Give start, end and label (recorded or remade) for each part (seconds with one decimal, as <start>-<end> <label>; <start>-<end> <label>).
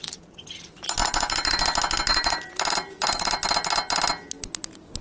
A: 0.0-1.0 recorded; 1.0-1.6 remade; 1.6-2.1 recorded; 2.1-3.4 remade; 3.4-5.0 recorded